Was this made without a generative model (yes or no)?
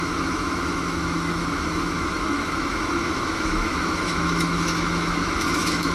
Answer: no